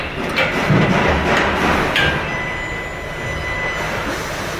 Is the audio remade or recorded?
recorded